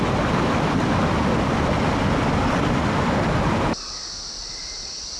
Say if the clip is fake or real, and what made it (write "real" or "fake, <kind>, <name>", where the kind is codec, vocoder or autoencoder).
real